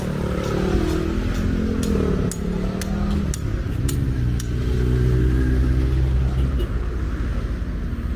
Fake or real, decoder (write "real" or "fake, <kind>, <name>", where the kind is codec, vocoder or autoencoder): real